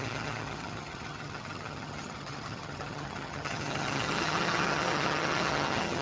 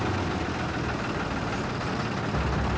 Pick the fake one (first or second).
first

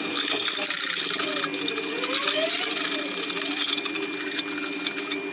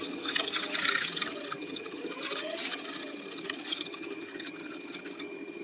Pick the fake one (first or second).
second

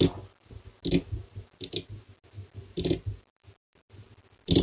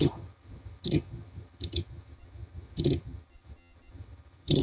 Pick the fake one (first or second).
second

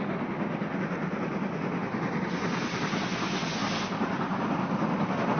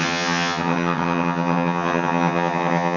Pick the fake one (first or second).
second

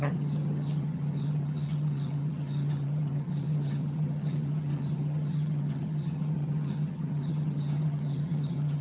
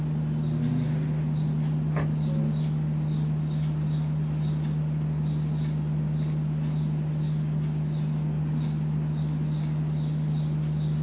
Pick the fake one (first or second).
first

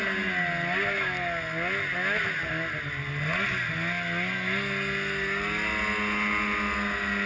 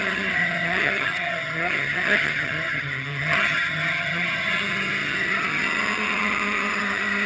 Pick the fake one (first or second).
second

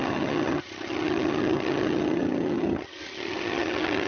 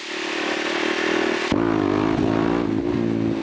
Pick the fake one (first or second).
first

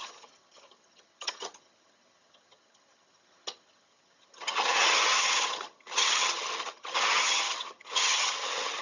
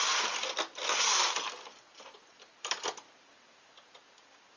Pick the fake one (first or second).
first